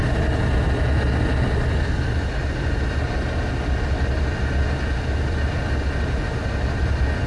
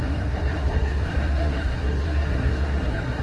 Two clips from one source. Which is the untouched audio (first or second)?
first